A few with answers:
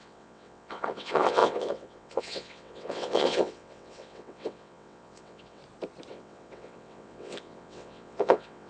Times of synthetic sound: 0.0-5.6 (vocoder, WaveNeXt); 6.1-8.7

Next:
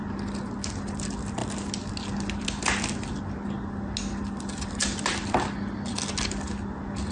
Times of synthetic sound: none

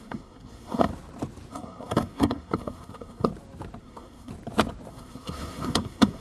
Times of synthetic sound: 0.0-0.9 (codec, SNAC); 1.5-3.3; 3.8-4.3; 4.9-6.2